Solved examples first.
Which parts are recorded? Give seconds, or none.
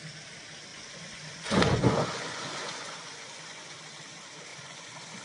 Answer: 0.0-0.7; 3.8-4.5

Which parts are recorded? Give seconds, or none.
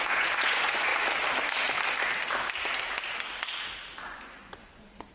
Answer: 0.9-4.0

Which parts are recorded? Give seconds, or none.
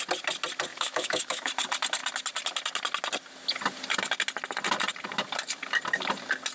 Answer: 0.0-0.7; 1.5-6.5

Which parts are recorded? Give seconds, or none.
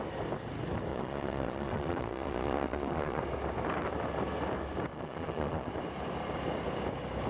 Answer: 0.0-0.9; 3.2-4.9; 5.7-7.3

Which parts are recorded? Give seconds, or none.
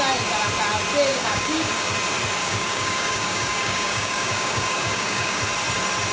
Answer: 0.0-1.1; 1.9-2.4; 5.4-6.1